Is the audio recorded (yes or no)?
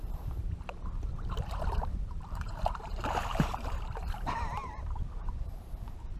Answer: no